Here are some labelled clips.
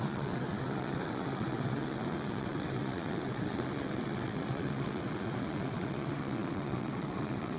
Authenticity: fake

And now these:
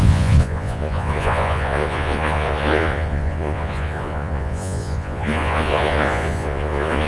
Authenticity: fake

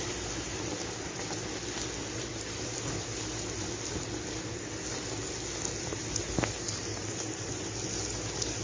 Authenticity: real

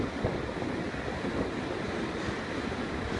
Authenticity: real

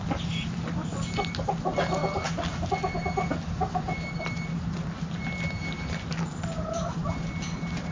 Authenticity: real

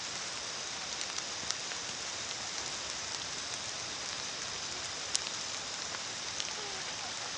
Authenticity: real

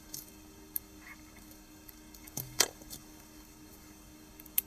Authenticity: fake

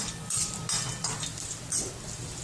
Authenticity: real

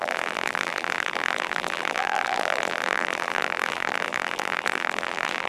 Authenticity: fake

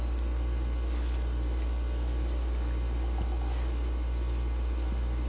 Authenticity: real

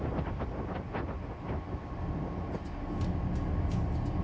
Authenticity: real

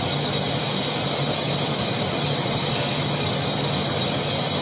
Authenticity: real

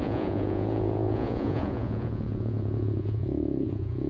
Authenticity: fake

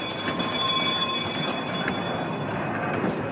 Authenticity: fake